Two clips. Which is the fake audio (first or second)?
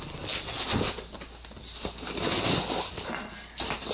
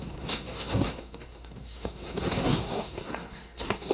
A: second